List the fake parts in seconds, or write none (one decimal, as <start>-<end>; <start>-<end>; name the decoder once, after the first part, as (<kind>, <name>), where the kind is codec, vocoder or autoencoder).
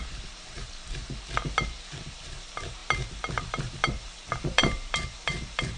0.0-1.0 (vocoder, BigVGAN v2); 2.1-2.8; 3.4-5.8